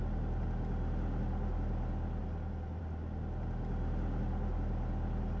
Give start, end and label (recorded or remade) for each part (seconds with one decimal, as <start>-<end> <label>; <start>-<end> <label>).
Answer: 0.0-5.4 recorded